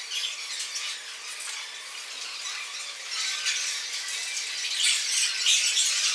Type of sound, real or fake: real